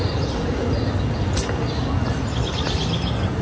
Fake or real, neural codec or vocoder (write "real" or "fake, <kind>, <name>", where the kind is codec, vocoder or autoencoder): real